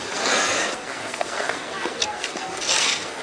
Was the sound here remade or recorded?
remade